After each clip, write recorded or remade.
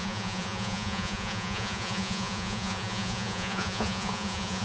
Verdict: remade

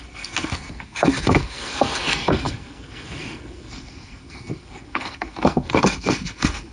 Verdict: remade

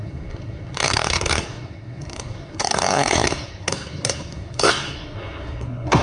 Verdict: remade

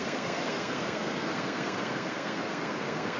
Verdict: remade